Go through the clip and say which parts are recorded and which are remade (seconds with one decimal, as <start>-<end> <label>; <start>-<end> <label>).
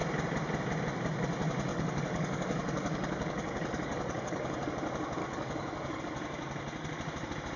0.0-1.7 recorded; 1.7-4.7 remade; 4.7-5.2 recorded; 5.2-6.0 remade; 6.0-7.6 recorded